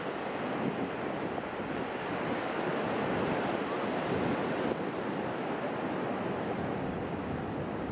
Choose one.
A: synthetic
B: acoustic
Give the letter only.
B